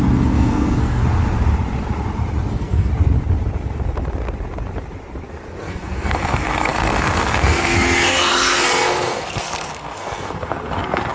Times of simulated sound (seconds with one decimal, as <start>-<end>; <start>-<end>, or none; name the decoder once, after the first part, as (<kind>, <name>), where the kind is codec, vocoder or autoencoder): 0.0-1.0 (codec, SNAC); 2.5-2.9; 5.7-11.1